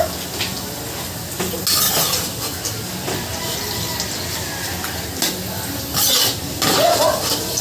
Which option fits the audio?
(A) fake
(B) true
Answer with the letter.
B